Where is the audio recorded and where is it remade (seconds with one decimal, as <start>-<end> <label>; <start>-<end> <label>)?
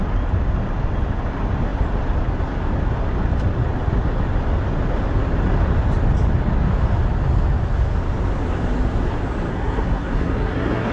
0.0-9.5 recorded; 9.5-10.9 remade